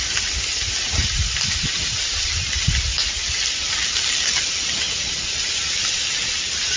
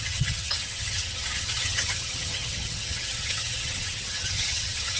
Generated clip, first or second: second